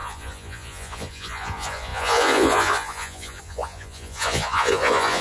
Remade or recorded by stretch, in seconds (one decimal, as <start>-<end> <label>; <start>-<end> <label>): 0.0-5.2 remade